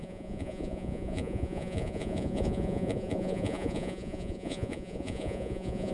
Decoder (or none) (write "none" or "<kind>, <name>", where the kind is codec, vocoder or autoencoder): vocoder, Vocos